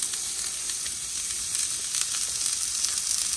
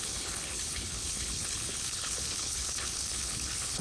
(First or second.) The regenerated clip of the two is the second